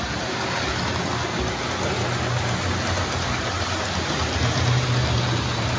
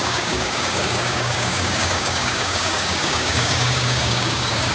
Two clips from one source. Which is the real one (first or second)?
first